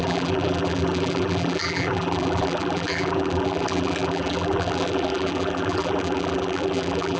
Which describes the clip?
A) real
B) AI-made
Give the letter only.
B